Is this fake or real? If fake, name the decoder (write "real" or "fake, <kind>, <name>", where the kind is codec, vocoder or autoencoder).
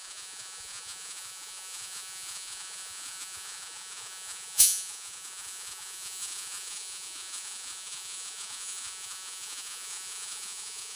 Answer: fake, vocoder, Vocos